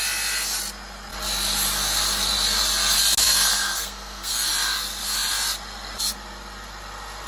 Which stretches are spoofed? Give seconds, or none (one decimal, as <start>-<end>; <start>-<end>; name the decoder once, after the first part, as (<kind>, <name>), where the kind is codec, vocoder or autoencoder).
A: 3.2-4.5 (codec, SNAC)